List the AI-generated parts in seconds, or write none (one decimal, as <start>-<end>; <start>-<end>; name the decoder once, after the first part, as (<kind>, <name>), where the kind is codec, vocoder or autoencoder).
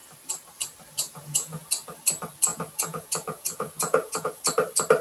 1.0-1.7 (vocoder, Vocos); 2.5-4.4